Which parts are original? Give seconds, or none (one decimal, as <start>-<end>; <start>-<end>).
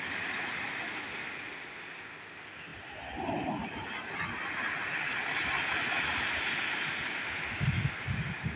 0.0-8.6